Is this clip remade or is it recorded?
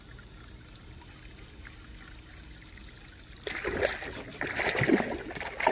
recorded